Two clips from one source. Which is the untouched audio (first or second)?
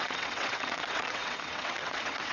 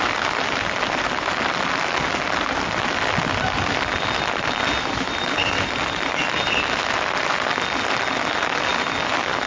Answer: second